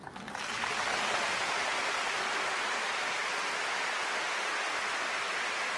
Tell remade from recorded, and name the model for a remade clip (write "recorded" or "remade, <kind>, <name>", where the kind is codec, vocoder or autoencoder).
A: recorded